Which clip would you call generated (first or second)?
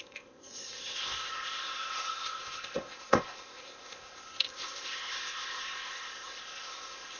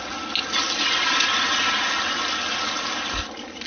first